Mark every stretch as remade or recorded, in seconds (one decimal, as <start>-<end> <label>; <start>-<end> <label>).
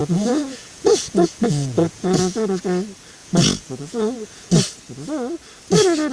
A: 0.0-2.6 remade; 2.6-3.2 recorded; 3.2-4.5 remade; 4.5-6.1 recorded